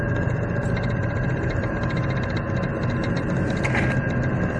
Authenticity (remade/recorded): recorded